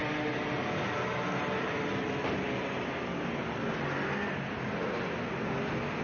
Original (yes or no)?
yes